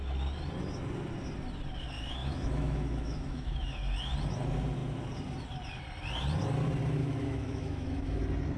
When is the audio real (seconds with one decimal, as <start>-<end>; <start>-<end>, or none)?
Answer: 0.0-2.2; 3.7-7.0; 8.2-8.6

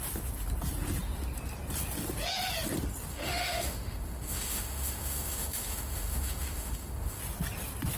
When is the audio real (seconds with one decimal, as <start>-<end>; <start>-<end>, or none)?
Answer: 0.0-3.1; 7.2-8.0

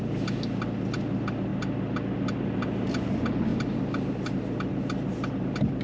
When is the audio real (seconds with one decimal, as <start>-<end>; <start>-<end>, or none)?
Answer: 0.0-5.8

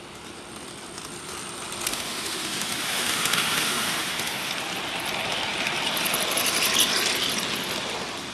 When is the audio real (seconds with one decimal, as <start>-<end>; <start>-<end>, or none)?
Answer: 0.0-1.9; 4.5-8.3

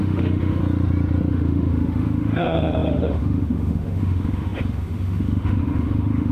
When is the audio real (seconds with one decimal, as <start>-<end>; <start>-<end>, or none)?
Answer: 0.6-1.3

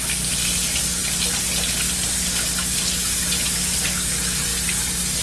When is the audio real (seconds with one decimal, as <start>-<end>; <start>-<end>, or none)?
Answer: 0.0-5.2

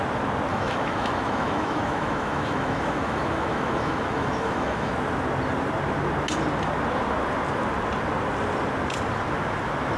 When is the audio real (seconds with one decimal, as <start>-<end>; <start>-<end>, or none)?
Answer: 0.0-0.5; 4.9-10.0

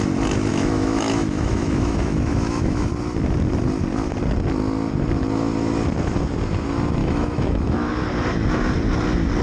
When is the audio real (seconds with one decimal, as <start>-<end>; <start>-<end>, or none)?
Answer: 0.0-0.5; 2.9-7.0; 7.9-9.4